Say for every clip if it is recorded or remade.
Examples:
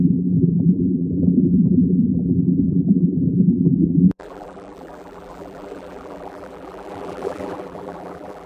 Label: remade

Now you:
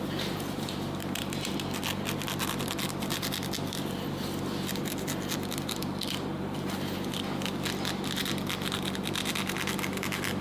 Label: recorded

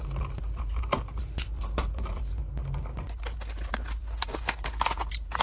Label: recorded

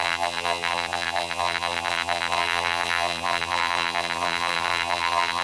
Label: remade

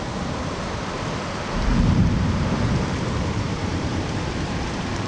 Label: remade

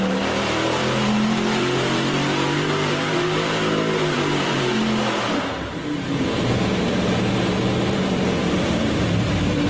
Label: remade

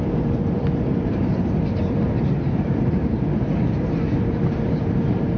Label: remade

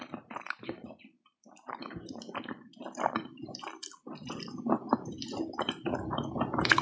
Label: remade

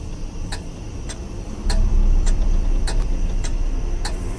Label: remade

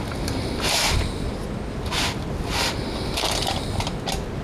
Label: recorded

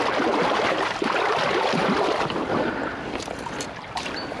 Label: remade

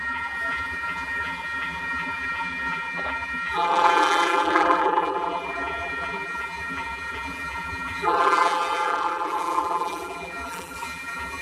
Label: remade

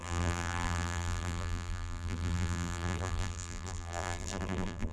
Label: remade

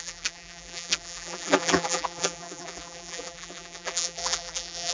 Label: remade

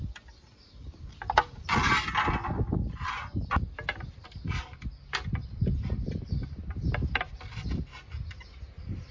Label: recorded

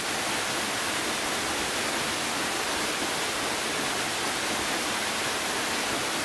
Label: recorded